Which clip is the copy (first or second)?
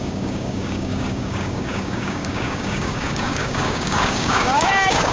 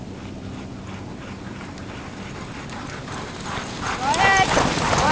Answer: first